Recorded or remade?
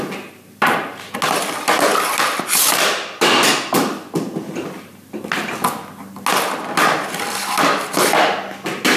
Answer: recorded